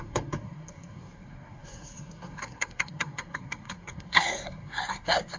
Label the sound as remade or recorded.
remade